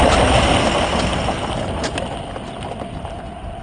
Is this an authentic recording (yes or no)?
yes